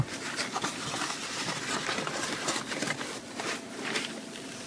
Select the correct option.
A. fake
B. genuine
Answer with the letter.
A